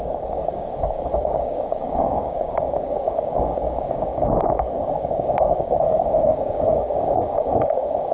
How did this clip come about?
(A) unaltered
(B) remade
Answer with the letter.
B